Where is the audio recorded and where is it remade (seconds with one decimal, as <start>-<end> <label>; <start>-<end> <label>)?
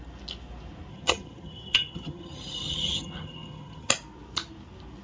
0.0-0.9 recorded; 0.9-3.9 remade; 3.9-5.0 recorded